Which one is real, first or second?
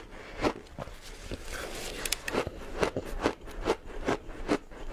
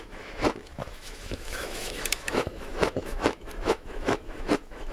first